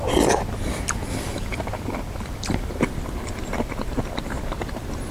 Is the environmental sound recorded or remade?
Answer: recorded